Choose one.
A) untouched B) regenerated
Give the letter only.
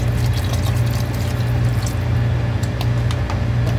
A